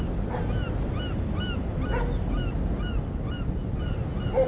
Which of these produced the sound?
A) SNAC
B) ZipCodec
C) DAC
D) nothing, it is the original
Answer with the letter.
D